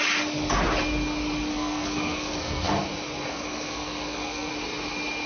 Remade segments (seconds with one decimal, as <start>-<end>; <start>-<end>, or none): 1.5-2.7; 3.3-4.5